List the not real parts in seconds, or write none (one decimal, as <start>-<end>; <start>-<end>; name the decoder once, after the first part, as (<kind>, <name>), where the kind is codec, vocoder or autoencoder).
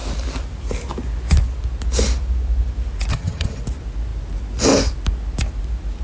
3.1-3.6 (vocoder, HiFi-GAN)